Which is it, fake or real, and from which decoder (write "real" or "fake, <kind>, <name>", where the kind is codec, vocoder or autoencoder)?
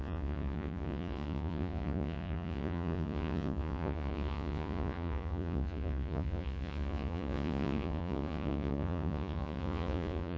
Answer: fake, vocoder, Vocos